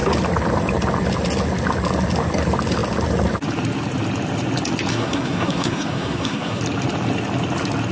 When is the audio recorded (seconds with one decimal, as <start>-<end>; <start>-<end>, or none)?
0.0-4.9; 6.6-7.9